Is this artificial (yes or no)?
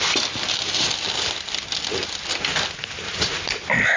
no